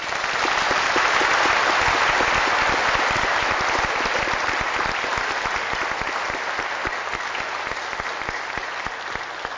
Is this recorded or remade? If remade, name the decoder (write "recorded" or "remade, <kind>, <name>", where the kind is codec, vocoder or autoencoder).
recorded